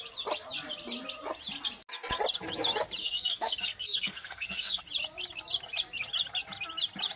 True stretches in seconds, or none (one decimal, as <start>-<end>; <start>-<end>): 0.0-3.0; 4.8-7.2